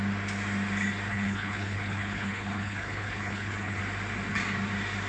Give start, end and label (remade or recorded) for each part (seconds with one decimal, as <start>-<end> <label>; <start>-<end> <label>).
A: 0.0-1.1 recorded; 1.1-3.8 remade; 3.8-5.1 recorded